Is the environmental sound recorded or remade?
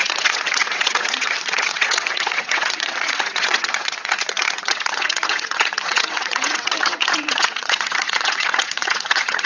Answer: remade